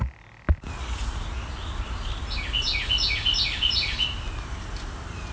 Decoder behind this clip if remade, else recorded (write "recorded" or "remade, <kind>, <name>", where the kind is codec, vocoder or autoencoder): recorded